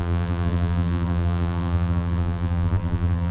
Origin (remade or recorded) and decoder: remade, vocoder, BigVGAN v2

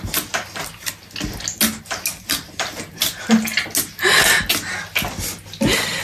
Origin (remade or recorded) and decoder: recorded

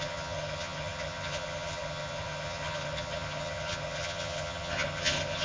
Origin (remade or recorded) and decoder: remade, vocoder, HiFi-GAN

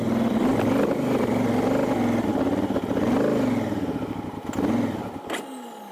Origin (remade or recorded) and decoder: recorded